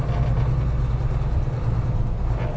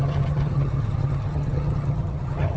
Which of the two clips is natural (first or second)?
first